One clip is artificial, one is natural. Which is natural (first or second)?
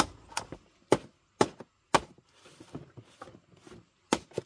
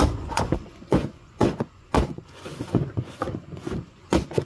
first